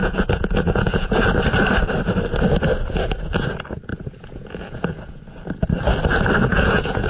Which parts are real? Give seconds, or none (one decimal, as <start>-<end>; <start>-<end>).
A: 1.3-3.9; 5.2-6.5